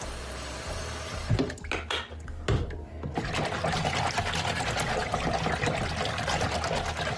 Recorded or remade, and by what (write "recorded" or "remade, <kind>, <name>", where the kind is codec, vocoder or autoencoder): recorded